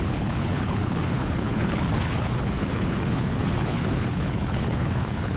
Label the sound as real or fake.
fake